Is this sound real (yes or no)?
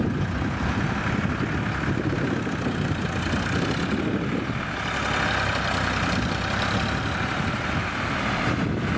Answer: yes